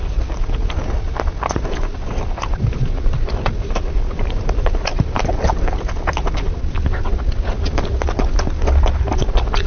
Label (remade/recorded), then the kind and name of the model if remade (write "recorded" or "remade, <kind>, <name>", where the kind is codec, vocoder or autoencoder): recorded